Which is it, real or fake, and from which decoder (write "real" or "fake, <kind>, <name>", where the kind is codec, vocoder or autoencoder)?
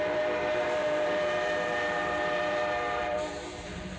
fake, vocoder, BigVGAN v2